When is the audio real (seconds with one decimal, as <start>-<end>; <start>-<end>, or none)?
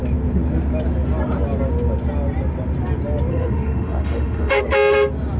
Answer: 0.0-3.3; 4.6-5.4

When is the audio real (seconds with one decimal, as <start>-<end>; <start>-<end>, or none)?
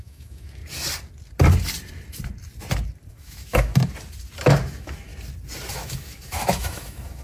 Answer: 0.6-3.1; 3.7-4.5; 5.1-5.7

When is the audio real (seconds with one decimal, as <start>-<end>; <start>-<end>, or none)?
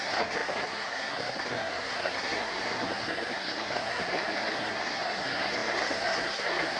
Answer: none